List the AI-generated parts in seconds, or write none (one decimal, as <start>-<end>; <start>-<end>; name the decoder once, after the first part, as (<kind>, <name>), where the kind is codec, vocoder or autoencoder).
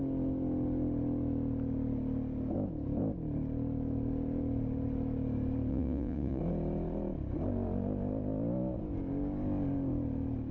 5.7-6.4 (vocoder, Vocos)